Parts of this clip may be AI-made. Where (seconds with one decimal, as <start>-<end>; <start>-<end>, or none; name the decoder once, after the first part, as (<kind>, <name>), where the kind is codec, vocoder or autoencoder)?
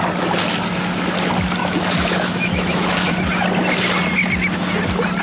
1.6-3.1 (autoencoder, DAC-VAE)